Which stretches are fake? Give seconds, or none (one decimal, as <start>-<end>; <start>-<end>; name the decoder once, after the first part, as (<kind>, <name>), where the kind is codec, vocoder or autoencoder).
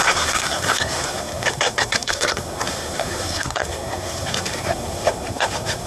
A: 0.0-5.9 (codec, SNAC)